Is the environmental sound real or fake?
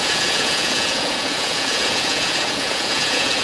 fake